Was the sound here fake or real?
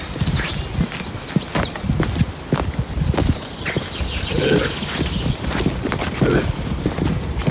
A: real